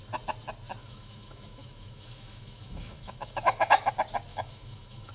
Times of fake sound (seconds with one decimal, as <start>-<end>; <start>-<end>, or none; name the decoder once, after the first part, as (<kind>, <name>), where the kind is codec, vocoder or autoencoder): 0.8-3.9 (autoencoder, DAC-VAE); 4.3-5.1